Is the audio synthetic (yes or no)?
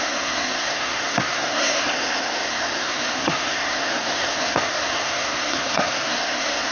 yes